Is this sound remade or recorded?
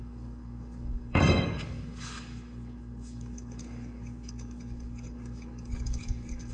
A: remade